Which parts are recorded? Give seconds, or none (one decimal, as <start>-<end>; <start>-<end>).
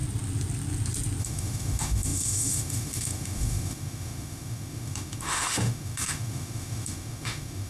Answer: 0.0-1.2